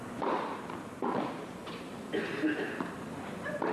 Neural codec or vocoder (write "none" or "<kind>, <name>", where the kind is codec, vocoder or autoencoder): vocoder, BigVGAN v2